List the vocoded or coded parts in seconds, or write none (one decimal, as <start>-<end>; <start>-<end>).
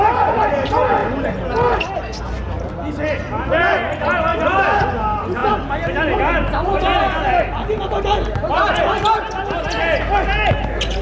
none